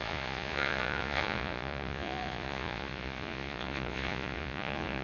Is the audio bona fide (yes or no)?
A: no